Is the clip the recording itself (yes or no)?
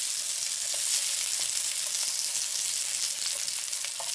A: yes